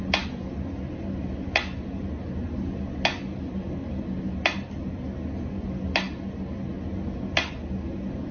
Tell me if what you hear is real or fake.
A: real